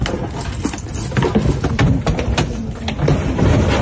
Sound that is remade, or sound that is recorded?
recorded